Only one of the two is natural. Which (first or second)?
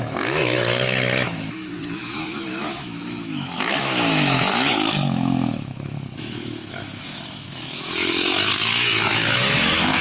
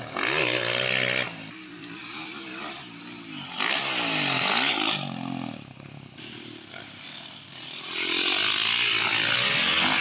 second